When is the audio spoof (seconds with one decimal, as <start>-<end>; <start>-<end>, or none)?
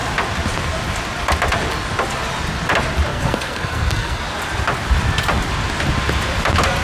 3.1-4.2